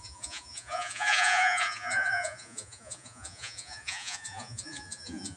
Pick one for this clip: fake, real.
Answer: fake